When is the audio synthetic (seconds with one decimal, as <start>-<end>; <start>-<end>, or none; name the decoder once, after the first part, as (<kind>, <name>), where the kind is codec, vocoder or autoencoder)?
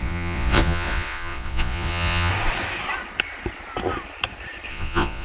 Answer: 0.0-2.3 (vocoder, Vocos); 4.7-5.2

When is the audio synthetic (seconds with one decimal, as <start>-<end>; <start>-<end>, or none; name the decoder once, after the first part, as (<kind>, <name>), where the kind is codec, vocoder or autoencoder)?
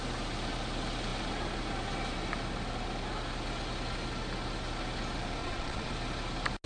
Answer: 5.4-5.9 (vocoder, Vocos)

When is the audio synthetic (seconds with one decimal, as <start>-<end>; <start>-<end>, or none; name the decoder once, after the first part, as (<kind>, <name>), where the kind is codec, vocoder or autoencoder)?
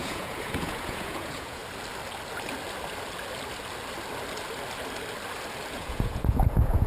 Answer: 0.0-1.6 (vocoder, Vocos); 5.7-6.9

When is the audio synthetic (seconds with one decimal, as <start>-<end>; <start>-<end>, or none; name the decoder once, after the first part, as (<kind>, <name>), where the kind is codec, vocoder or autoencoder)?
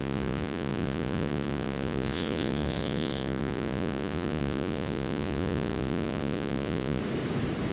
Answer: 0.0-7.0 (vocoder, Vocos)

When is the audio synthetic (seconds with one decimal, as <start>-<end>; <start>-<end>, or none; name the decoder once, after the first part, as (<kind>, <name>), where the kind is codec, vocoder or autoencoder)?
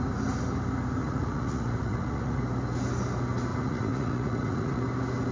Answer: 1.0-2.4 (vocoder, Vocos); 3.5-4.8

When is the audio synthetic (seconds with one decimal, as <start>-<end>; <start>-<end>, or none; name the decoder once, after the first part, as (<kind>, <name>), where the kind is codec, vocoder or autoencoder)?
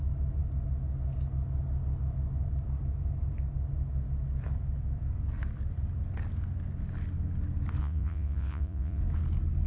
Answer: 7.8-9.0 (vocoder, Vocos)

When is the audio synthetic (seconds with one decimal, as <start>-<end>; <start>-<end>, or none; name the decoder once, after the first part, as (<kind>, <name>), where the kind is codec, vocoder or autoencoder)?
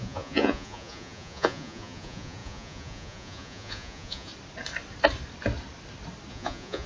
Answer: 0.0-4.3 (vocoder, Vocos); 6.3-6.9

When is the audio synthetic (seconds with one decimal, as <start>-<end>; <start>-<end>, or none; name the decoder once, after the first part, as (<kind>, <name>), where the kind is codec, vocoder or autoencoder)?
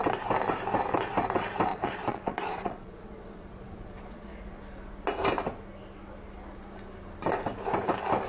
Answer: 1.7-4.6 (vocoder, Vocos)